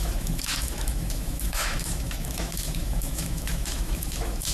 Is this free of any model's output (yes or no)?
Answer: no